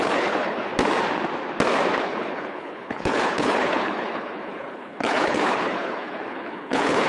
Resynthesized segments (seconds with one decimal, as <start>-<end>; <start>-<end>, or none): 0.0-0.7; 2.0-7.1